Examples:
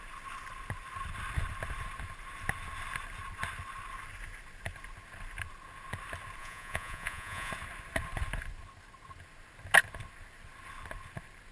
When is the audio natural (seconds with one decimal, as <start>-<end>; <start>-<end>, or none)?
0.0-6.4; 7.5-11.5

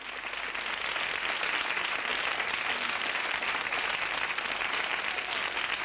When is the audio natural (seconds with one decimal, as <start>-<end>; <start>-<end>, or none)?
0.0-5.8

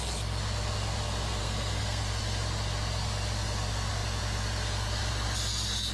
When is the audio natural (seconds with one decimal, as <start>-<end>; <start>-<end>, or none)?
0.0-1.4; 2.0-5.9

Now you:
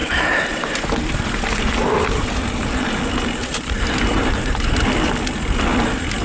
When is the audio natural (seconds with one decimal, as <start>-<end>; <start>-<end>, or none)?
3.0-3.4; 4.8-6.2

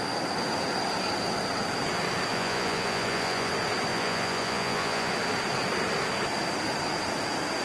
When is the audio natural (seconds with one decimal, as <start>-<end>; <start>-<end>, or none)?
0.0-2.3; 3.5-3.9; 5.1-7.6